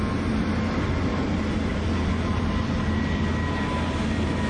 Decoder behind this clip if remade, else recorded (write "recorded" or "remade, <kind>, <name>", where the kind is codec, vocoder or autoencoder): recorded